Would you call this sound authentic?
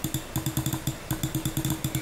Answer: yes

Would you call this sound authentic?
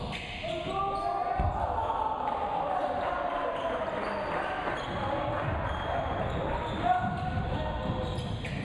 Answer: yes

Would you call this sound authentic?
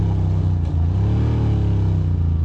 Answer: yes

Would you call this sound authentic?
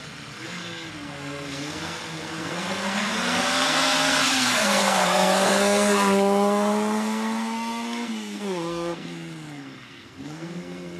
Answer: no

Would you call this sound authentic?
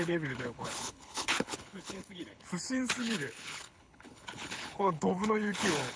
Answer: no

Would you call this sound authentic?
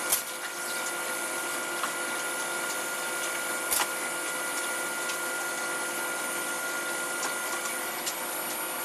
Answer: yes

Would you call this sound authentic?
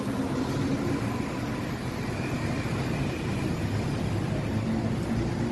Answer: yes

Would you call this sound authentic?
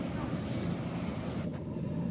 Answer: yes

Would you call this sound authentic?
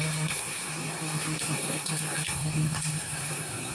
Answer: no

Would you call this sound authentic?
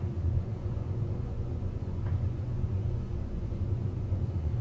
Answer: no